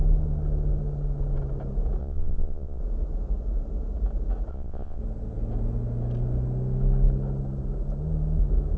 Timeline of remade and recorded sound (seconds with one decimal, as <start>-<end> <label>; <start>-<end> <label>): 0.0-2.0 recorded; 2.0-2.8 remade; 2.8-4.5 recorded; 4.5-5.0 remade; 5.0-8.8 recorded